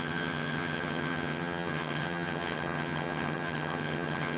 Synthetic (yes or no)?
yes